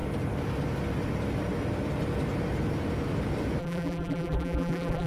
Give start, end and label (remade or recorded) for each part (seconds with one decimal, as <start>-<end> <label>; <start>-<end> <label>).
0.0-3.6 recorded; 3.6-5.1 remade